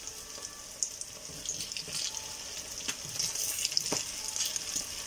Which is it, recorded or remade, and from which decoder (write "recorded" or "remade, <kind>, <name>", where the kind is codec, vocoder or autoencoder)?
recorded